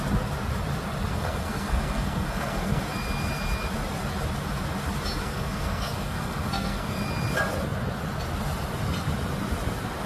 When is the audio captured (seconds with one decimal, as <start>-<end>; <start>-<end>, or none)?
0.0-1.1; 2.8-5.2; 7.0-10.1